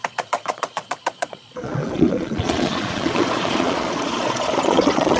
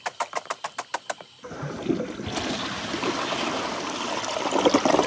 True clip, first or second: second